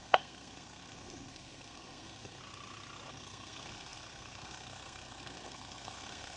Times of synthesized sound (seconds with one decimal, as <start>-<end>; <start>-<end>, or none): 0.0-2.4; 3.1-6.4